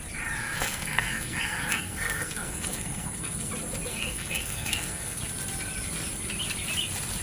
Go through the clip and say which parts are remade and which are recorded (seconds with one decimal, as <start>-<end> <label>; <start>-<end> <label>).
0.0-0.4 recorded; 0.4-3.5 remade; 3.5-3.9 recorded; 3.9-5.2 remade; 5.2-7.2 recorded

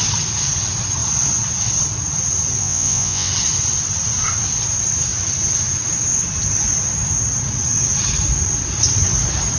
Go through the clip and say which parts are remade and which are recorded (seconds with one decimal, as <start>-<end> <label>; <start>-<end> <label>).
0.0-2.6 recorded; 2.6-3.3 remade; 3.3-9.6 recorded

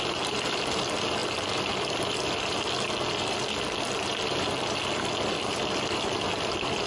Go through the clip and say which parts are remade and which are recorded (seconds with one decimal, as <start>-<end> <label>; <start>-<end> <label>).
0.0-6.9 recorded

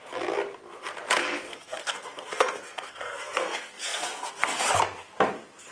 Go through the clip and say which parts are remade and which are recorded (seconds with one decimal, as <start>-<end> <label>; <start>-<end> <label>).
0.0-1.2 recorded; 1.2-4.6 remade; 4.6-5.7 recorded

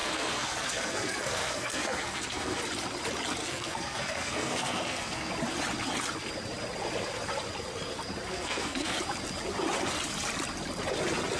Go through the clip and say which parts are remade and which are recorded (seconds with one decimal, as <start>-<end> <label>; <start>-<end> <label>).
0.0-2.6 remade; 2.6-3.4 recorded; 3.4-5.3 remade; 5.3-8.3 recorded; 8.3-9.0 remade; 9.0-11.4 recorded

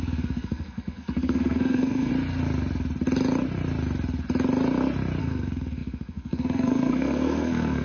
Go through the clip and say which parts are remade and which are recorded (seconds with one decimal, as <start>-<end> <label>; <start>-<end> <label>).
0.0-2.1 remade; 2.1-5.2 recorded; 5.2-7.8 remade

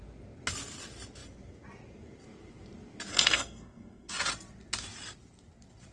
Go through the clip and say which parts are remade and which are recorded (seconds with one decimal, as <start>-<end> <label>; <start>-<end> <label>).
0.0-3.1 recorded; 3.1-4.1 remade; 4.1-5.9 recorded

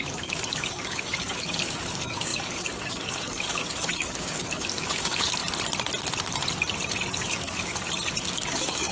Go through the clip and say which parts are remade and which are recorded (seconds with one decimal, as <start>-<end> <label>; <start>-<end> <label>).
0.0-5.4 remade; 5.4-7.1 recorded; 7.1-7.7 remade; 7.7-8.2 recorded; 8.2-8.9 remade